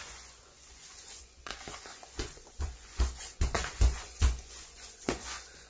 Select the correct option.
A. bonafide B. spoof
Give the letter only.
B